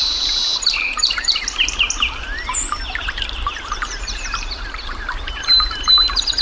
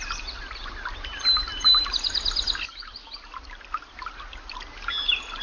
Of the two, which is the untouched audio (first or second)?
second